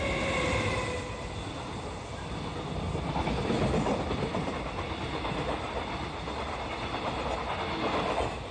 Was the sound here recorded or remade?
recorded